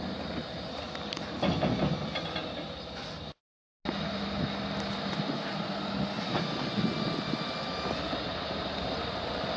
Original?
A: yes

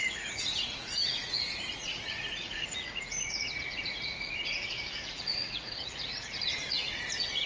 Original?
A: no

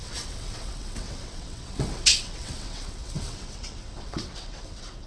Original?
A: no